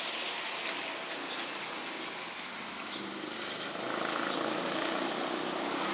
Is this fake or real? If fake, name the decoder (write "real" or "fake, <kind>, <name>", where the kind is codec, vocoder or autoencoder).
real